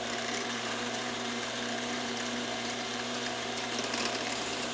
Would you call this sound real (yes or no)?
no